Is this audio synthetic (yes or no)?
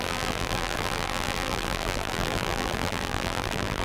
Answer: yes